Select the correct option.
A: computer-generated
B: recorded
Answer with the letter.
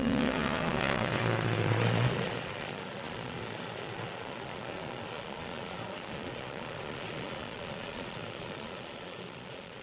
A